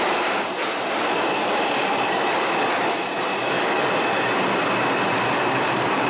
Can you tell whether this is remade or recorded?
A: recorded